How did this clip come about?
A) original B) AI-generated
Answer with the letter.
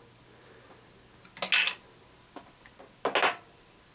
A